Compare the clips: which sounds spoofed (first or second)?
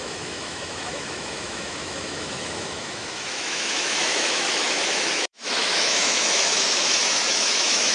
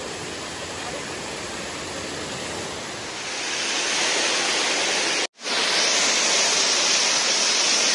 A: first